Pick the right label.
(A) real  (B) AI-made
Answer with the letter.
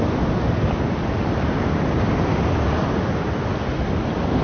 A